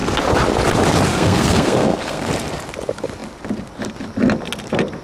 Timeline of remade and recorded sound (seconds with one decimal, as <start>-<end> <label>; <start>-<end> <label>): 0.0-1.1 recorded; 1.1-2.3 remade; 2.3-5.0 recorded